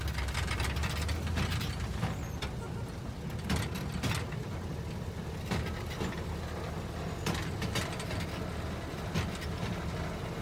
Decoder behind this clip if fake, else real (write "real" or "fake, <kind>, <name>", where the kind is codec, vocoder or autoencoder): real